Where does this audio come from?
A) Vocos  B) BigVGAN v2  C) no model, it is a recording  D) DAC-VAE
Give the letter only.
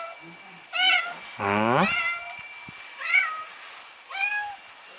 C